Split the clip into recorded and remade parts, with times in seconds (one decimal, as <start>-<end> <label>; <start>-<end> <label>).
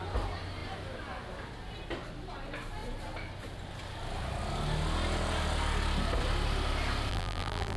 0.0-7.1 recorded; 7.1-7.8 remade